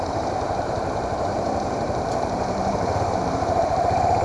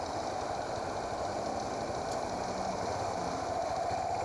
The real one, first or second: second